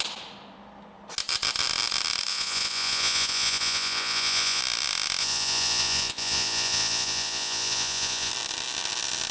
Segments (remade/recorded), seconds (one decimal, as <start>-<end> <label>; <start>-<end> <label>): 0.0-2.3 recorded; 2.3-4.6 remade; 4.6-5.2 recorded; 5.2-8.3 remade; 8.3-9.3 recorded